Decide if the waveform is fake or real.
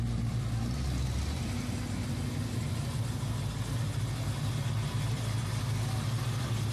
real